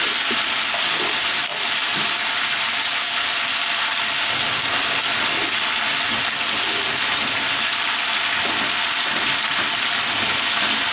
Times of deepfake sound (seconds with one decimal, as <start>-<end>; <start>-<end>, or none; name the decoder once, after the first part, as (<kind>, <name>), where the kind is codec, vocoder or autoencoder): none

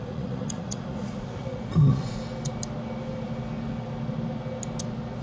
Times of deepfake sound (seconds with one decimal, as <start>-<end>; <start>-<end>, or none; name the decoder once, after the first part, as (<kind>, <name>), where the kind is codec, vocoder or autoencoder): 0.0-2.2 (vocoder, Vocos)

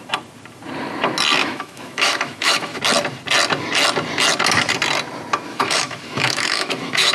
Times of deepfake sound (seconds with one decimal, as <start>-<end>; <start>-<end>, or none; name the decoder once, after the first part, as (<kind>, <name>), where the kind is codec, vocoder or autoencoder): 1.4-2.8 (autoencoder, DAC-VAE); 5.5-7.1

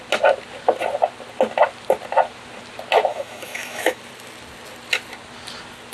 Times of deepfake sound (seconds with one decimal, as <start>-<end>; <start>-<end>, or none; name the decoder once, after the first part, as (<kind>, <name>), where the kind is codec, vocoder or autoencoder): 3.1-4.0 (autoencoder, DAC-VAE)